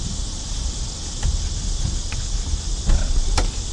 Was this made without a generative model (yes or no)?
yes